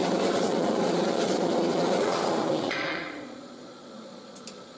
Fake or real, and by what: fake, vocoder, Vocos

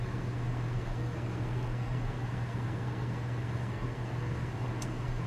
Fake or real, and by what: fake, codec, SNAC